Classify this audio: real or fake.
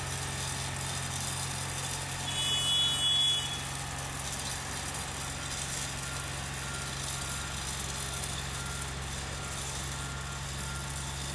real